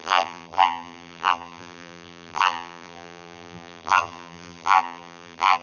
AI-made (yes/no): yes